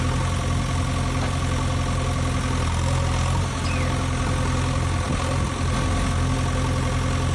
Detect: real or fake real